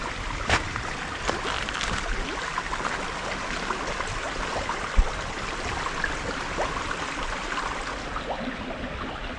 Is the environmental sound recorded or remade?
recorded